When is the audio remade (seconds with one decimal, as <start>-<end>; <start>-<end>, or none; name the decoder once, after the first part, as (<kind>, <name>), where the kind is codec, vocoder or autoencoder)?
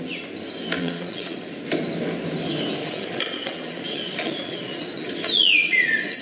0.8-1.5 (vocoder, Vocos); 2.8-6.2